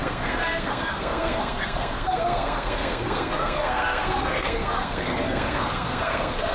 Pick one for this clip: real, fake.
fake